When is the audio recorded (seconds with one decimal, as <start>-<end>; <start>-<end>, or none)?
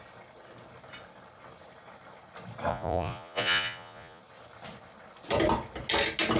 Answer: 0.0-2.7; 4.2-6.4